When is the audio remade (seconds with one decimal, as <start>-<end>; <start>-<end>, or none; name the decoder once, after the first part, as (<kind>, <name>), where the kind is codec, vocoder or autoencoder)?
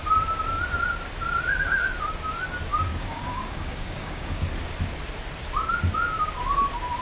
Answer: 2.9-4.4 (codec, DAC)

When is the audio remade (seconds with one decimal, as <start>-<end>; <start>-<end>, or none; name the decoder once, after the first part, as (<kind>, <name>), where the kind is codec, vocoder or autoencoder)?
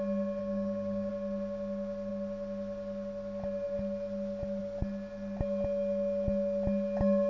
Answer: 0.4-1.1 (codec, DAC)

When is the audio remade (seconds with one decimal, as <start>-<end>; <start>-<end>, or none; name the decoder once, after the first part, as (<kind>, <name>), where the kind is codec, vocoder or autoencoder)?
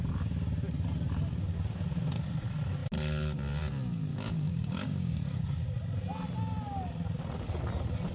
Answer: 4.1-5.5 (codec, DAC)